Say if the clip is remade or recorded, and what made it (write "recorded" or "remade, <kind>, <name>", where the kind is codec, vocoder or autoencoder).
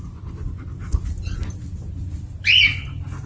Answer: recorded